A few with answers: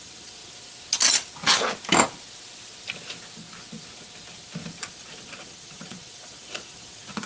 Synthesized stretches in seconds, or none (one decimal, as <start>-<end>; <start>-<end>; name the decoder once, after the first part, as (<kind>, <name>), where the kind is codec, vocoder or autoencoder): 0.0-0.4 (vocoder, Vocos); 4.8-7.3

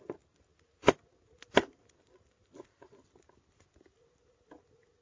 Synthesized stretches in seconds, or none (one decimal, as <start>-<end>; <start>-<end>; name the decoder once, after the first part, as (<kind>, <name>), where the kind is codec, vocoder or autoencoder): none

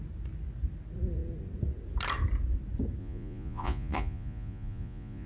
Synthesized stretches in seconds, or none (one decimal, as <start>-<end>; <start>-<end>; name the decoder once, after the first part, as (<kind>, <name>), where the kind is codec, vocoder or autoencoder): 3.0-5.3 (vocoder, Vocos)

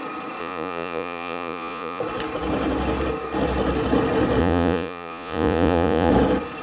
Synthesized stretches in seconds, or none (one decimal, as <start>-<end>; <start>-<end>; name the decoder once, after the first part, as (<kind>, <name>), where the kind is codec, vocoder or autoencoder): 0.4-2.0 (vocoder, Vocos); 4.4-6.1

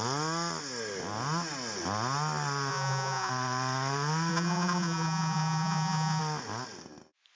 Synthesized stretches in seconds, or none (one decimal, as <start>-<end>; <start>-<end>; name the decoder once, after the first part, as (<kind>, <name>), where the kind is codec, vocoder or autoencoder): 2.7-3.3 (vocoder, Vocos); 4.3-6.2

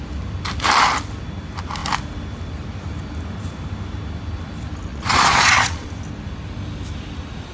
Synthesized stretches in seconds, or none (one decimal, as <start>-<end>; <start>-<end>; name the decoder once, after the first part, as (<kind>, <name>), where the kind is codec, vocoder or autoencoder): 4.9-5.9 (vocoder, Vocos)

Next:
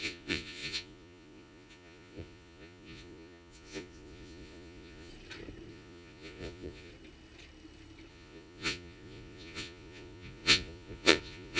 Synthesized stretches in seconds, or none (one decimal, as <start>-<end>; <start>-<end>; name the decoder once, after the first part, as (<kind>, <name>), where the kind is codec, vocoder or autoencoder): 0.0-5.1 (vocoder, Vocos); 5.7-6.9; 8.1-11.6

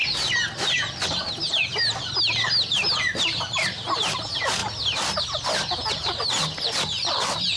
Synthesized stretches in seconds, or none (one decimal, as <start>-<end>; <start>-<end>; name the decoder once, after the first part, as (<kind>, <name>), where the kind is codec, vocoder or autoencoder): none